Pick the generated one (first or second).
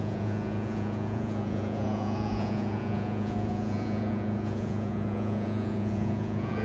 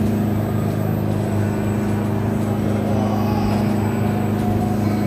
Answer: first